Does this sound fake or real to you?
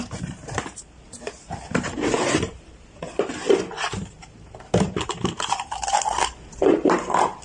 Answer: fake